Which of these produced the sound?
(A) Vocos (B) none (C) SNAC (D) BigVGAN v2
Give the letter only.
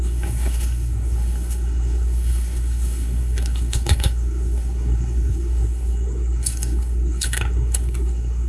C